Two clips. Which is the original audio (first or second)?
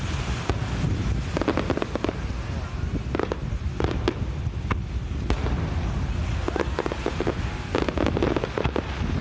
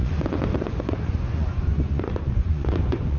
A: first